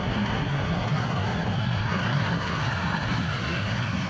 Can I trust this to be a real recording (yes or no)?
no